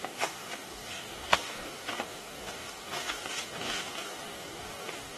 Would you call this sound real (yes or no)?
no